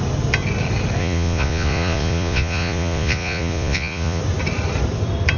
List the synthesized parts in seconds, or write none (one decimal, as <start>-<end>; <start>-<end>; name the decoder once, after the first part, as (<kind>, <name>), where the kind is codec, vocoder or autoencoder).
1.0-4.2 (vocoder, Vocos)